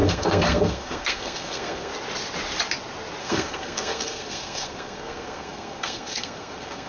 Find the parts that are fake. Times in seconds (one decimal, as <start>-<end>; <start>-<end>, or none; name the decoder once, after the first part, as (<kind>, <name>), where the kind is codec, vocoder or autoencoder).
0.0-1.9 (codec, SNAC); 3.2-6.9